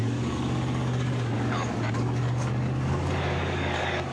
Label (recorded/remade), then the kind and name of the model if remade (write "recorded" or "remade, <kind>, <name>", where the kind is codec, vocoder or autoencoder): remade, codec, DAC